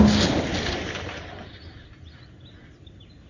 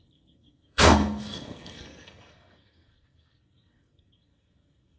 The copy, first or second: second